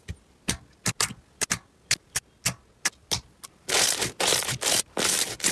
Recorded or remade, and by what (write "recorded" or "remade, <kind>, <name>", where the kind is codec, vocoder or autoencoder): recorded